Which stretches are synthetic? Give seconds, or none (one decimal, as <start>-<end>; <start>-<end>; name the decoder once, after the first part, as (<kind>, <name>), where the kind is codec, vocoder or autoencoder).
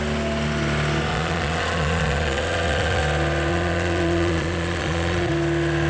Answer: 1.1-3.0 (vocoder, Vocos); 3.5-5.3